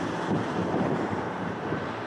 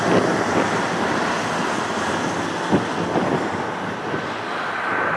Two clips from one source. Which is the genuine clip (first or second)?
second